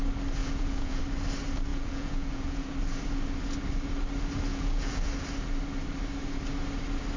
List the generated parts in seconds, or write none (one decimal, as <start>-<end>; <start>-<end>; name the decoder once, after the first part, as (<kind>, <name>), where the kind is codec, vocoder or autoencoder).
0.4-1.0 (vocoder, Vocos); 1.7-2.7; 4.5-5.1